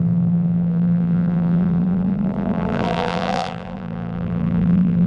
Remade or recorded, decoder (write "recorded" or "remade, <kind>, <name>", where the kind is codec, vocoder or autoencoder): remade, vocoder, BigVGAN v2